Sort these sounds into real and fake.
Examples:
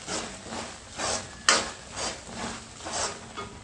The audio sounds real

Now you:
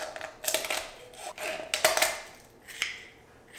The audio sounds real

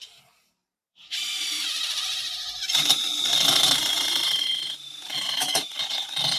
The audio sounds fake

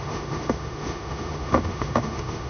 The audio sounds fake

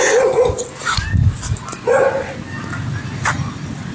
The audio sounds real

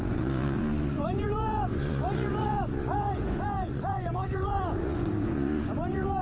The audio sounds fake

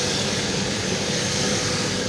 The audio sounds fake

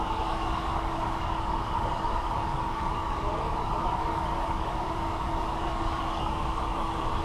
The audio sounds fake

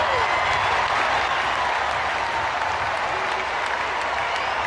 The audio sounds real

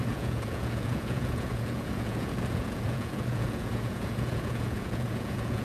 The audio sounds fake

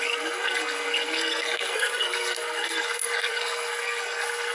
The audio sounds fake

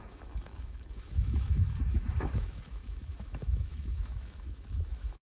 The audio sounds fake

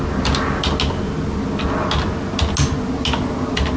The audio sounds real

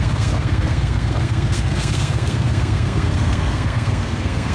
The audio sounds fake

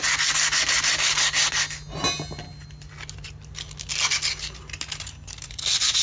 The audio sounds real